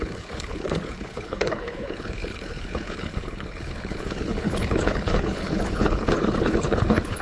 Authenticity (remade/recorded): remade